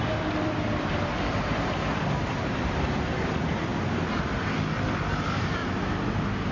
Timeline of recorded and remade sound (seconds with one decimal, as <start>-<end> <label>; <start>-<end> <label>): 0.0-3.7 remade; 3.7-5.1 recorded; 5.1-5.6 remade; 5.6-6.5 recorded